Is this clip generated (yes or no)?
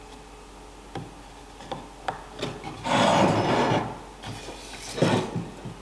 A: no